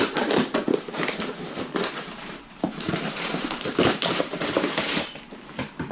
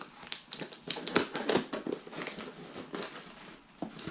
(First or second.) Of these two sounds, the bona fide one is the second